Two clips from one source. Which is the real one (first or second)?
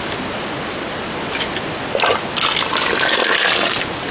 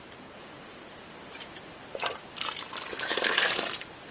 first